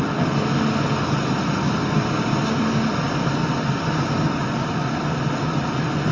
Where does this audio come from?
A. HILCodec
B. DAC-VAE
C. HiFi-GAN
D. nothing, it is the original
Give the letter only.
D